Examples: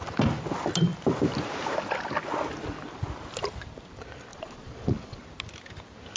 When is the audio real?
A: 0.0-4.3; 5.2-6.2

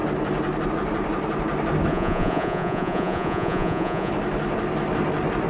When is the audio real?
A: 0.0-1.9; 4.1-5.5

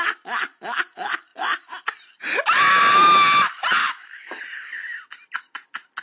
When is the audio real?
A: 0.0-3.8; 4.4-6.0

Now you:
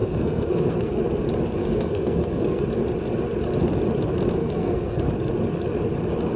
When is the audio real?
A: 1.0-1.6; 2.6-4.4; 5.0-6.4